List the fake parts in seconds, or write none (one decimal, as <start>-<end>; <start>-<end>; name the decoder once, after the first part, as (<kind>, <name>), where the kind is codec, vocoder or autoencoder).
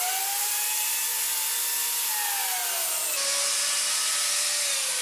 0.0-1.1 (vocoder, BigVGAN v2); 4.1-5.0